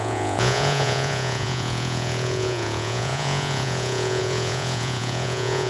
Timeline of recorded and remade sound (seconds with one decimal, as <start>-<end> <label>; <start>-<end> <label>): 0.0-5.7 remade